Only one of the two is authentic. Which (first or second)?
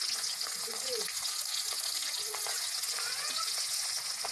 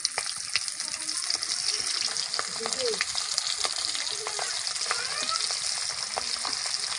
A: second